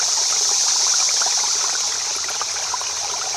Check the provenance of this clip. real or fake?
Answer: real